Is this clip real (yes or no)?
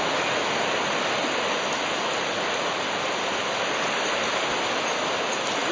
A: yes